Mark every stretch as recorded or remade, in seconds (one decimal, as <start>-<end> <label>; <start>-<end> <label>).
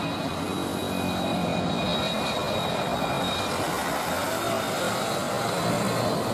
0.0-6.3 recorded